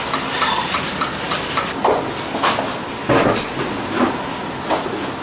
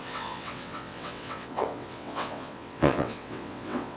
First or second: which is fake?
second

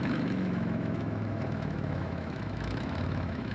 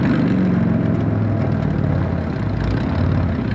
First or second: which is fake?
first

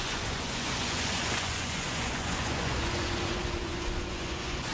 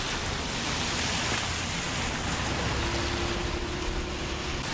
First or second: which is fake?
first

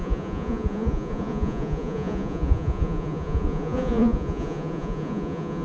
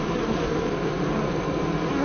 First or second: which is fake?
first